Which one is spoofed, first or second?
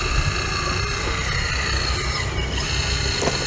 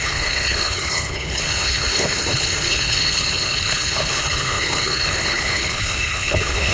second